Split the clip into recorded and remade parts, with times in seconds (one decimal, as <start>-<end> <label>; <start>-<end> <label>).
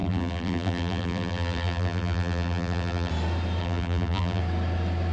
0.0-3.1 remade; 3.1-3.6 recorded; 3.6-4.4 remade; 4.4-5.1 recorded